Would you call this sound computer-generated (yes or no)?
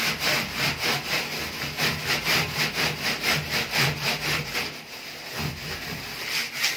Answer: no